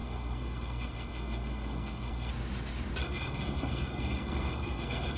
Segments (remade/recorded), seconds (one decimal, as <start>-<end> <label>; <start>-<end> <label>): 0.0-2.3 remade; 2.3-3.0 recorded; 3.0-5.2 remade